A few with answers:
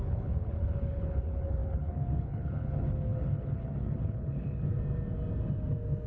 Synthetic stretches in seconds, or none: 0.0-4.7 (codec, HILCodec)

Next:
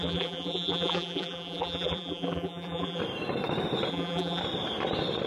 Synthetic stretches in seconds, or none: 0.0-3.0 (vocoder, BigVGAN v2); 3.9-4.4

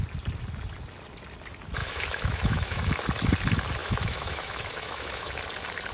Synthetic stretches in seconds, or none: 1.8-2.8 (autoencoder, DAC-VAE); 3.8-5.4

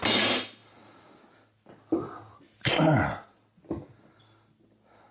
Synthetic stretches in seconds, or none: none

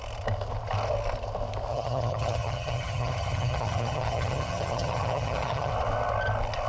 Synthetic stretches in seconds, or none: 1.7-5.7 (vocoder, HiFi-GAN)